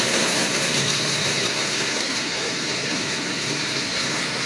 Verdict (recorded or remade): remade